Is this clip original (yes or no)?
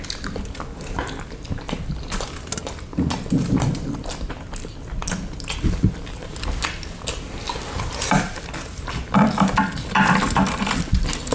yes